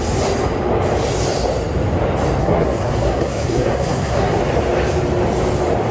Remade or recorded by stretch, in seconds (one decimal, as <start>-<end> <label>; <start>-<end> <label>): 0.0-2.4 recorded; 2.4-4.4 remade; 4.4-5.9 recorded